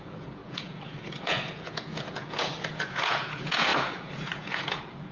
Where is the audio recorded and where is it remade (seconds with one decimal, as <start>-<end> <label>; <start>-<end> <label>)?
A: 0.0-5.1 remade